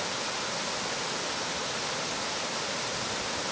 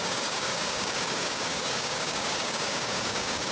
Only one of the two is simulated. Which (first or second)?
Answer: second